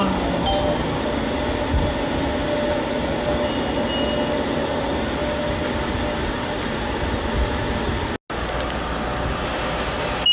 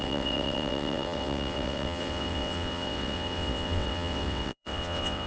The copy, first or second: second